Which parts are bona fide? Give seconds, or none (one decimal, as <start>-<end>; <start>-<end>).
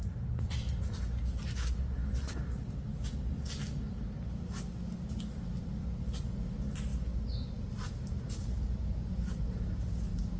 0.0-10.4